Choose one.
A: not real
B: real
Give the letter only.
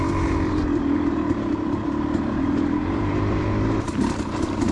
A